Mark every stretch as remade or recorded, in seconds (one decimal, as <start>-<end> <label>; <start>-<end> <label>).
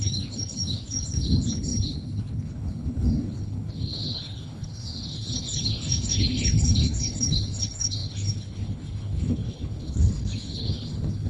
0.0-11.3 remade